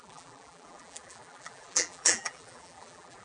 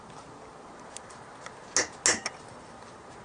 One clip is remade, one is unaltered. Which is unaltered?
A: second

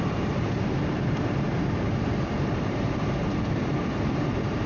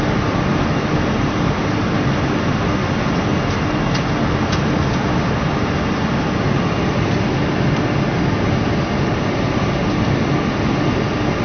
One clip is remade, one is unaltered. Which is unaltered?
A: second